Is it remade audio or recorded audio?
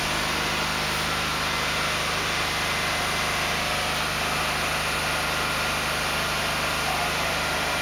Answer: recorded